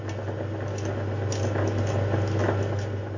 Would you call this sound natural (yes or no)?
yes